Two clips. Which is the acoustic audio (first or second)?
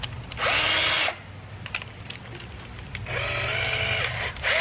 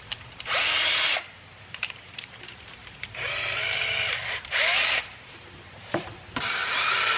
first